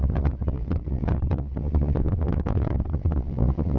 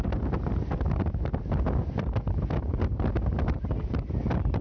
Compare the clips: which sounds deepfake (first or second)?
first